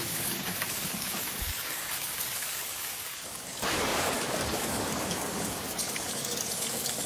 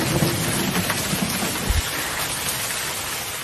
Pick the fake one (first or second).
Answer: first